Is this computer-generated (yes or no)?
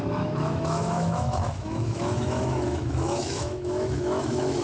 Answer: yes